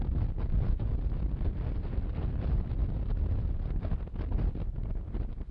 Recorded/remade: recorded